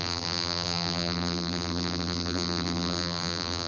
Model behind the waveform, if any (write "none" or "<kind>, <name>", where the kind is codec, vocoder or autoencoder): vocoder, BigVGAN v2